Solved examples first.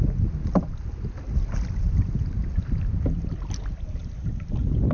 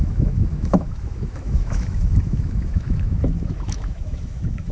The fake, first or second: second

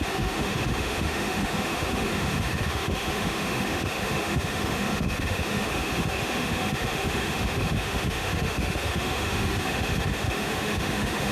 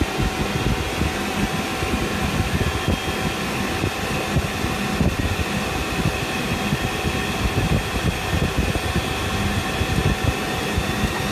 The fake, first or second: first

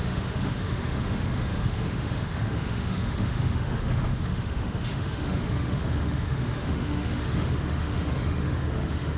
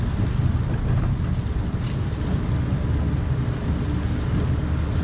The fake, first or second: first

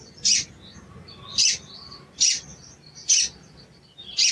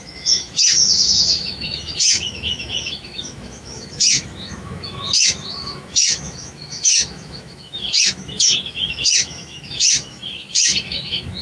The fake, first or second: second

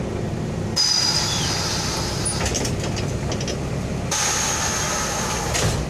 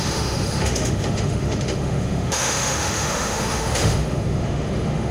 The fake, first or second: second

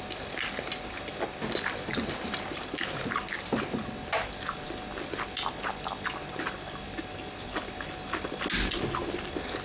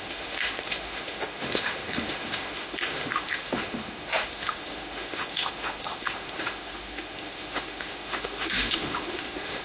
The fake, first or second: second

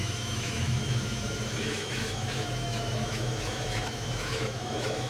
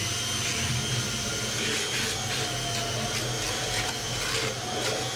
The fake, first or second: first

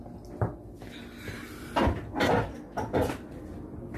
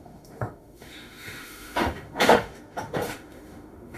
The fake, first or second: second